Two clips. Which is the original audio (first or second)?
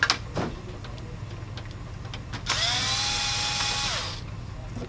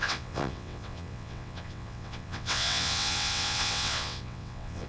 first